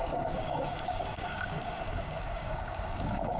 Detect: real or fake fake